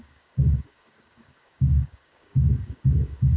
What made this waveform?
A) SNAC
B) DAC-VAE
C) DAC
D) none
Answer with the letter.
C